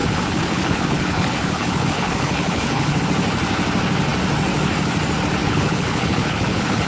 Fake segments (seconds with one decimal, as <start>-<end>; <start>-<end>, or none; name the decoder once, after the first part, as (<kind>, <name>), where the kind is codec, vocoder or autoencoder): 0.0-3.0 (codec, HILCodec); 5.4-6.9